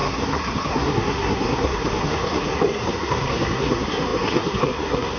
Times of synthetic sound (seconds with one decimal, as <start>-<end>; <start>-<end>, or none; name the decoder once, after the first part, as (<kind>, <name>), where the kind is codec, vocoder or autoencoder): 0.0-5.2 (codec, SNAC)